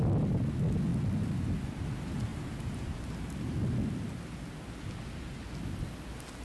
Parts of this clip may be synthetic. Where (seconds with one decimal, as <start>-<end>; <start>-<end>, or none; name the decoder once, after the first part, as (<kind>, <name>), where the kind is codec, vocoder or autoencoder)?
none